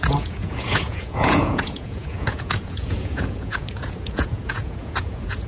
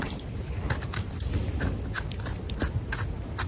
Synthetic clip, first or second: first